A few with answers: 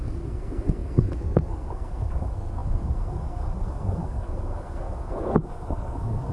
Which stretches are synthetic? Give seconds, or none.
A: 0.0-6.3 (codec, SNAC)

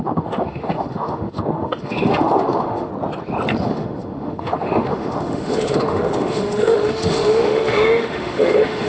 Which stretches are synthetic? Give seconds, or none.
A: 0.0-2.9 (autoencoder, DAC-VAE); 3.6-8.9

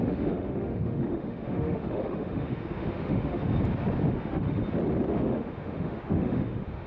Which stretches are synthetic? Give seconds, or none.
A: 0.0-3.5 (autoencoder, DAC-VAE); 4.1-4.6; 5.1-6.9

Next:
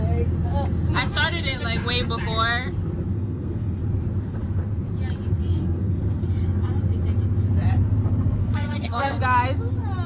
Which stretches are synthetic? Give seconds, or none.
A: 3.1-3.8 (codec, SNAC); 5.4-6.2; 8.4-9.2